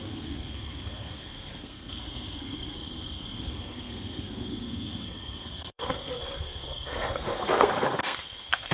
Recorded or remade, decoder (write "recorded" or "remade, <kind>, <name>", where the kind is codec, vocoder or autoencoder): remade, codec, SNAC